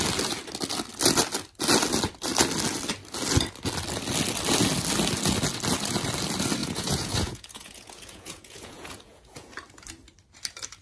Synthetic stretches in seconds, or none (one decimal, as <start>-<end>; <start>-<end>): 6.6-9.5